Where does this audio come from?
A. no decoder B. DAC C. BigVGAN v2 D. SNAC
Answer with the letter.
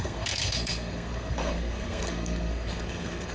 D